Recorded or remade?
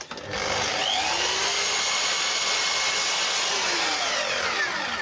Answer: recorded